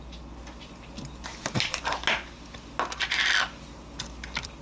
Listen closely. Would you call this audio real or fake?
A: real